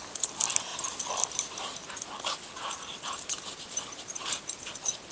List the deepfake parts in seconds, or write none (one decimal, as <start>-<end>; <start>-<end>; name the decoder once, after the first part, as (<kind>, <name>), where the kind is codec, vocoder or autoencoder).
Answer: none